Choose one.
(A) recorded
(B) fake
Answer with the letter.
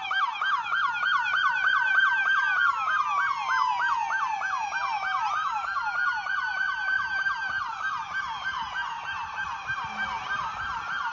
A